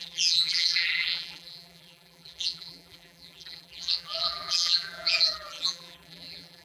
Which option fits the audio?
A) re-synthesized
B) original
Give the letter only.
A